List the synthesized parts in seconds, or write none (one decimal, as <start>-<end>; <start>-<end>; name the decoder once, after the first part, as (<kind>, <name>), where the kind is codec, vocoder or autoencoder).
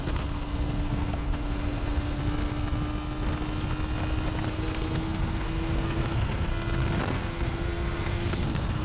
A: 0.0-2.2 (codec, SNAC); 4.5-6.5; 7.0-8.8